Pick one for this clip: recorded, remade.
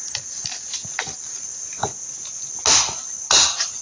recorded